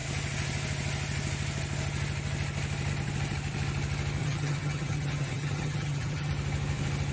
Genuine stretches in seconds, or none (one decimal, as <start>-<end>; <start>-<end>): 0.0-4.2; 6.3-7.1